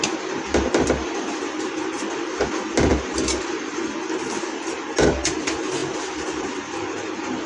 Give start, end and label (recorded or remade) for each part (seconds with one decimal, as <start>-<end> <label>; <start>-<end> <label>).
0.0-2.9 recorded; 2.9-3.5 remade; 3.5-5.8 recorded; 5.8-7.5 remade